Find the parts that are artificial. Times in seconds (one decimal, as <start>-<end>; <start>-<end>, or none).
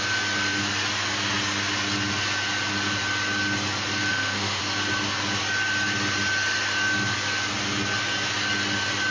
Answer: 4.1-4.6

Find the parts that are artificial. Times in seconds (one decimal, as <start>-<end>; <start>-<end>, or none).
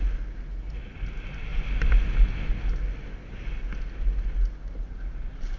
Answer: none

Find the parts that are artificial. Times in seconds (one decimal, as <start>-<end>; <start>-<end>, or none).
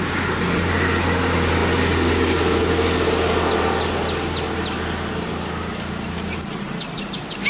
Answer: none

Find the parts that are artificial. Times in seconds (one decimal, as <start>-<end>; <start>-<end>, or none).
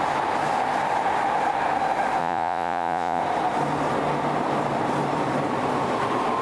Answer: 2.2-3.2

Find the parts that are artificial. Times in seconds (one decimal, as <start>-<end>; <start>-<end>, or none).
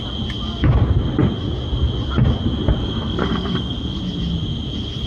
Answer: 2.8-4.0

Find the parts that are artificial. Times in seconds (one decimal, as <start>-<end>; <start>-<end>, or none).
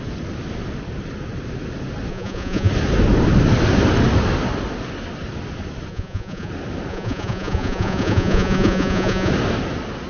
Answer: 2.1-2.7; 5.9-6.5; 6.9-9.3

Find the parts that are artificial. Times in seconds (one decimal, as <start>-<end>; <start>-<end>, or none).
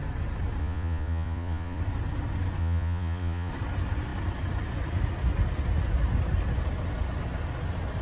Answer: 0.6-1.8; 2.6-3.5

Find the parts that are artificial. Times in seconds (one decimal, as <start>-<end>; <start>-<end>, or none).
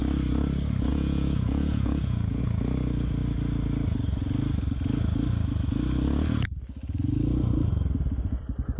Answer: 0.9-2.4